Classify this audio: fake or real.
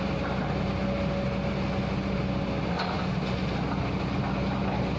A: real